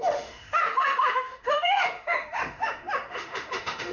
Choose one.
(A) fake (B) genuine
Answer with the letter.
A